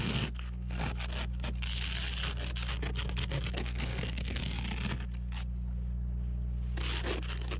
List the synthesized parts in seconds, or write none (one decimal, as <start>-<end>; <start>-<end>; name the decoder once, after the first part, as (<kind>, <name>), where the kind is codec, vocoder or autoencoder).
0.0-0.8 (codec, SNAC); 3.5-4.4